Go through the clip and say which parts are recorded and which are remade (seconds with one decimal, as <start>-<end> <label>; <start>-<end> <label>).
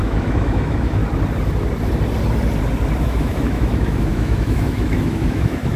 0.0-1.0 remade; 1.0-3.0 recorded; 3.0-5.8 remade